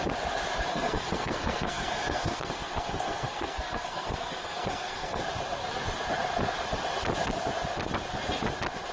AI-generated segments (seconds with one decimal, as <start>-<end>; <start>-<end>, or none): 0.7-5.2